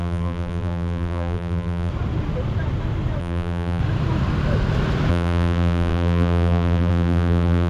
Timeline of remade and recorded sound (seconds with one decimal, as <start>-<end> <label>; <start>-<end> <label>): 0.0-1.9 remade; 1.9-3.2 recorded; 3.2-3.8 remade; 3.8-5.1 recorded; 5.1-7.7 remade